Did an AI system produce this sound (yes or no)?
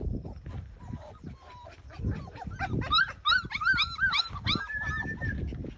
no